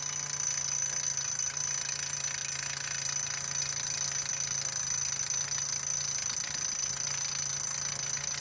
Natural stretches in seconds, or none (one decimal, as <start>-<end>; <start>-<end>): 0.0-8.4